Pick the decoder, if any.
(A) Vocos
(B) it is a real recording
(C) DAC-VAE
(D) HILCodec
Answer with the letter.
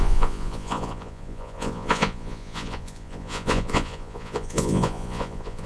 A